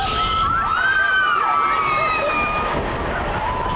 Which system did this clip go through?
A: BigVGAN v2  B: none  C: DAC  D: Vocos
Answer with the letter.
B